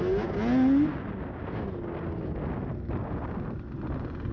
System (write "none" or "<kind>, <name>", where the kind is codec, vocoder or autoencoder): none